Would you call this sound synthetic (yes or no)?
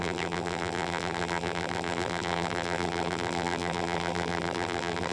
yes